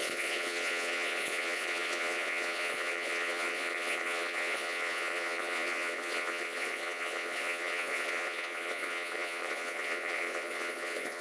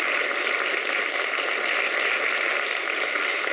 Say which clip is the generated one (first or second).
first